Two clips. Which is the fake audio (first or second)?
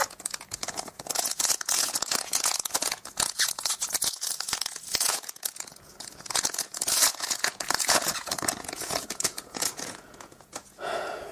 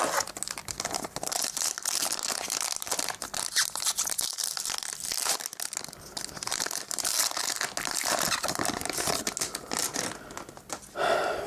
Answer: first